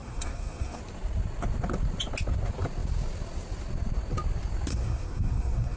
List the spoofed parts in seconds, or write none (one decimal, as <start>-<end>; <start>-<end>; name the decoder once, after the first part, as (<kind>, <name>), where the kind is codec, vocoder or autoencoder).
0.0-0.8 (codec, SNAC); 4.7-5.8